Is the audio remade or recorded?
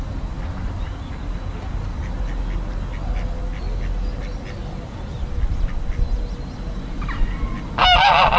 recorded